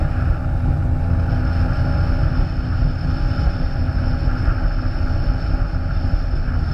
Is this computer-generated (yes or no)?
no